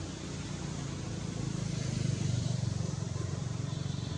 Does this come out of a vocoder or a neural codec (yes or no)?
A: yes